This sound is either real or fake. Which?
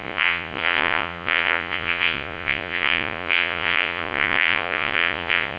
fake